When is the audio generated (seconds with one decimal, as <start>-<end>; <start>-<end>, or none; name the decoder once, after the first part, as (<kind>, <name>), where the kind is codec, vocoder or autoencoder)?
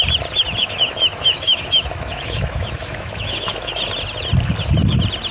0.6-3.8 (autoencoder, DAC-VAE)